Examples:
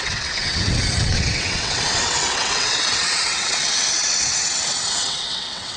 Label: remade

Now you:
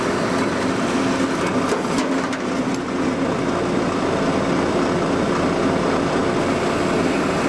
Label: recorded